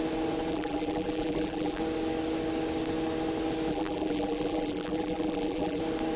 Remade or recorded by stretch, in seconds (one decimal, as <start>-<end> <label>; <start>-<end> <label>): 0.0-0.5 recorded; 0.5-1.8 remade; 1.8-3.7 recorded; 3.7-5.8 remade; 5.8-6.2 recorded